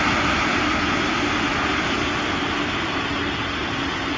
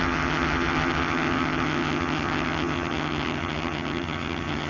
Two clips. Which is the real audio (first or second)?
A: first